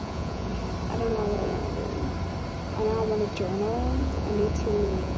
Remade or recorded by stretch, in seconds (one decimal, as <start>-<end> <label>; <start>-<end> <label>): 0.0-0.5 remade; 0.5-1.1 recorded; 1.1-1.6 remade; 1.6-4.0 recorded; 4.0-5.2 remade